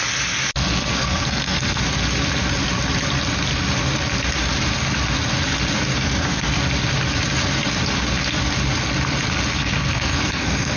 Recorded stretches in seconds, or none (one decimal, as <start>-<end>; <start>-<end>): 0.0-0.9; 1.8-5.9; 6.5-9.6